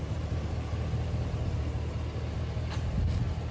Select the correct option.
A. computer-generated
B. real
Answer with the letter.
B